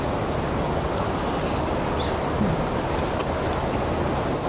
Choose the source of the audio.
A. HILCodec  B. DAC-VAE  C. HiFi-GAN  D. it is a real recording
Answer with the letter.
D